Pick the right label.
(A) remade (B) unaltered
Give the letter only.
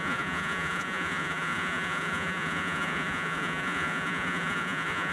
A